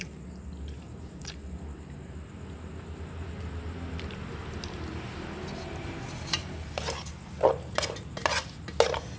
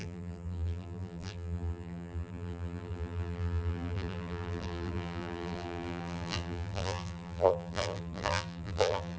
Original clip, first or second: first